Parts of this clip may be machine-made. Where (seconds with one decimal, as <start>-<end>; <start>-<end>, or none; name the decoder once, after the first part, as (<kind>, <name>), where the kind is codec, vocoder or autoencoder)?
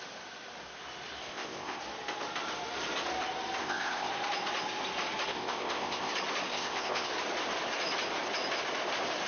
1.2-1.8 (codec, ZipCodec); 3.6-4.1; 5.3-6.1; 6.5-7.1